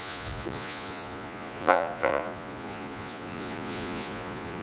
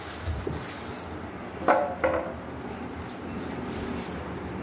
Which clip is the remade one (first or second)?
first